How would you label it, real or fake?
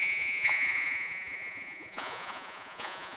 fake